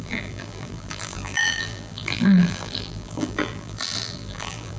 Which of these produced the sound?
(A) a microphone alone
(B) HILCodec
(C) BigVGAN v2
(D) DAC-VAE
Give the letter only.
C